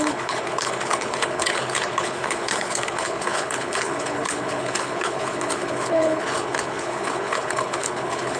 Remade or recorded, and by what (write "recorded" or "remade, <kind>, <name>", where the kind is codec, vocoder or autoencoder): remade, codec, HILCodec